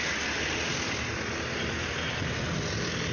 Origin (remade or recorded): recorded